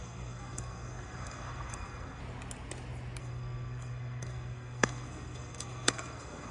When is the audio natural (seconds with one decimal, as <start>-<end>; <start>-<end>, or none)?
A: 2.2-3.2